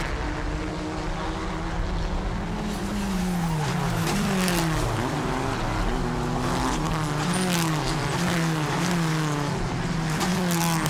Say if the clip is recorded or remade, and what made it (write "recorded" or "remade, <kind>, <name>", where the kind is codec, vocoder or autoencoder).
recorded